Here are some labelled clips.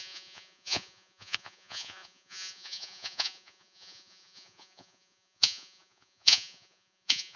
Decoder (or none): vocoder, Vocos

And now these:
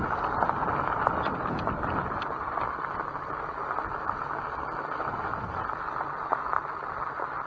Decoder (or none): none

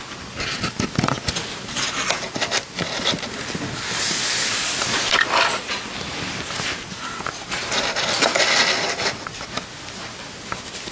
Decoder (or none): none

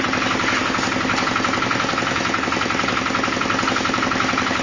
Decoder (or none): none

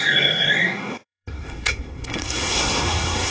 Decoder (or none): codec, SNAC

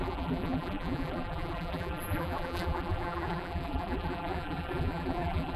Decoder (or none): vocoder, BigVGAN v2